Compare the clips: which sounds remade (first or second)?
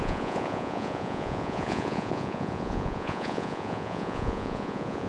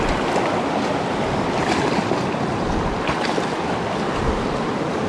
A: first